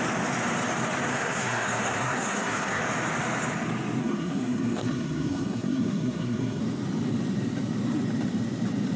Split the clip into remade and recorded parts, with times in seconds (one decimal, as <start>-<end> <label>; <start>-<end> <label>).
0.0-1.1 recorded; 1.1-2.8 remade; 2.8-4.0 recorded; 4.0-6.6 remade; 6.6-9.0 recorded